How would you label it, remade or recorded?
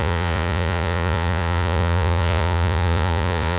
remade